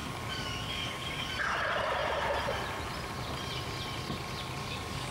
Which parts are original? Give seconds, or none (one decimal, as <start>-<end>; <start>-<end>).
1.3-4.6